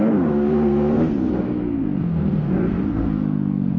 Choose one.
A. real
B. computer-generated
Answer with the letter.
B